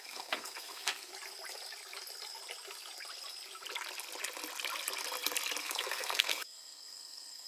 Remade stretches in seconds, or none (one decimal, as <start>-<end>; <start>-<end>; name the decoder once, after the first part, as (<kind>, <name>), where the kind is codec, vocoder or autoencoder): 0.0-1.1 (codec, SNAC); 5.6-7.5